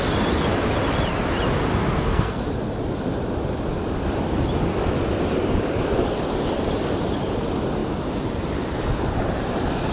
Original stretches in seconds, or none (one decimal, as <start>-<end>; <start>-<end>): 0.0-1.7; 2.4-9.9

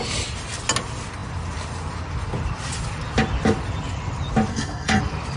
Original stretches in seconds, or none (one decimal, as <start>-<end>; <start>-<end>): 0.0-4.5; 5.0-5.4

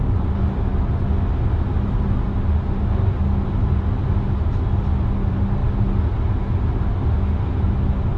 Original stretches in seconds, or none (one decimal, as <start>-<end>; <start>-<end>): 0.0-8.2

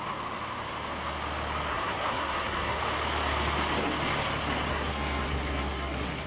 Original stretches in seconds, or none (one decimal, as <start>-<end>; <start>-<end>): 0.0-1.7; 2.8-4.7